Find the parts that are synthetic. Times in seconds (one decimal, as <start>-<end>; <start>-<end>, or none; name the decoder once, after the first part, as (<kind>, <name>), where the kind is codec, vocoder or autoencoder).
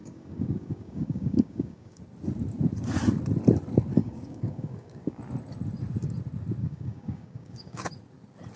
0.0-2.0 (codec, DAC); 4.0-5.2; 6.6-7.9